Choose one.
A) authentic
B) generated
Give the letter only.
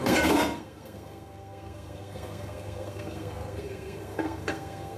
B